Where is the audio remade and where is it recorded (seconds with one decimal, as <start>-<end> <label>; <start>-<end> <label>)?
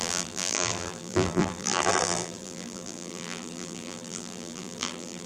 0.0-5.3 remade